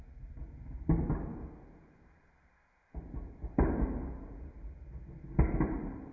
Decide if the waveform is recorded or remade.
recorded